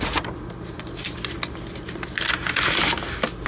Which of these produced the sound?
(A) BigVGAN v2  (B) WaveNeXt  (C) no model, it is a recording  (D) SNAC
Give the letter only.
C